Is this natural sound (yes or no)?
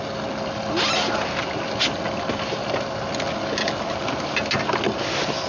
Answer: yes